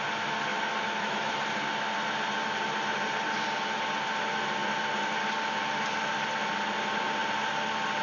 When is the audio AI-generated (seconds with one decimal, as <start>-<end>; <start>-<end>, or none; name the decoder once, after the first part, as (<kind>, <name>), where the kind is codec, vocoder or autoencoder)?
0.5-1.3 (autoencoder, DAC-VAE)

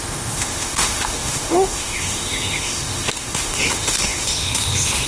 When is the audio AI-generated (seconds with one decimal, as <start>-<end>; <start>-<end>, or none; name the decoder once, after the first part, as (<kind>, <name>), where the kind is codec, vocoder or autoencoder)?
0.0-5.1 (autoencoder, DAC-VAE)

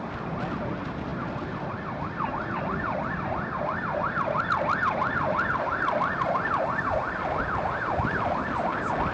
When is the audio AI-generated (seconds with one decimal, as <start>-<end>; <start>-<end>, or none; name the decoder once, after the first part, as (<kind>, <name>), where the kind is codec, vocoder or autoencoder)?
none